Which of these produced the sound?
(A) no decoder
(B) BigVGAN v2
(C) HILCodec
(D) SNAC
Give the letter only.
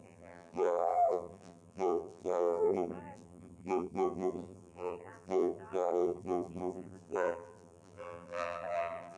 B